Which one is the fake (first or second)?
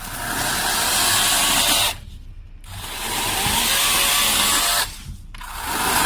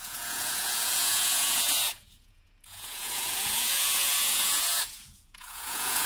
second